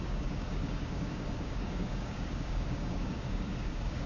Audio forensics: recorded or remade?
remade